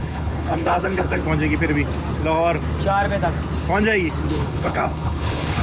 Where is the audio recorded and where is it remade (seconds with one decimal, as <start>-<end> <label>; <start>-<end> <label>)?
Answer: 0.0-1.2 remade; 1.2-4.3 recorded; 4.3-5.6 remade